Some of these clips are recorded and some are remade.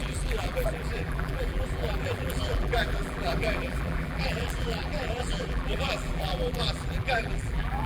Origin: remade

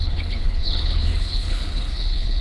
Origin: remade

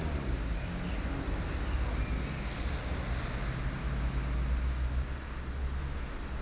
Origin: recorded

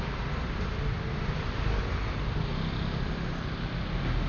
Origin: recorded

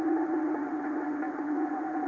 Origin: remade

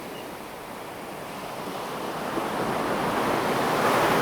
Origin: recorded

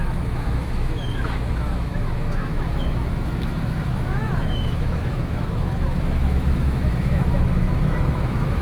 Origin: remade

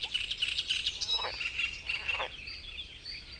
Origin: recorded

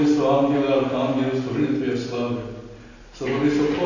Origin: recorded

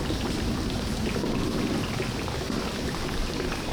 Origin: recorded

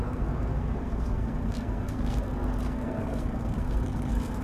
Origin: remade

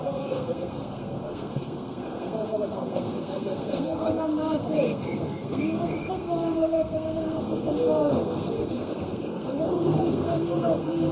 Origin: remade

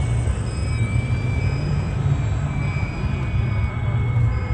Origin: remade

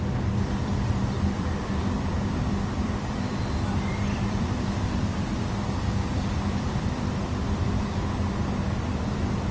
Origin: remade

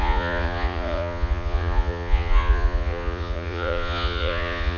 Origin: remade